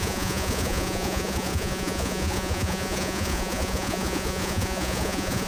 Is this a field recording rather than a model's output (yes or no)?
no